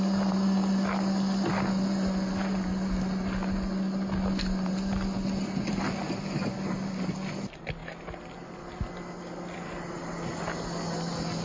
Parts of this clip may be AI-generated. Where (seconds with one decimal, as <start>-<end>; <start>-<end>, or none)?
none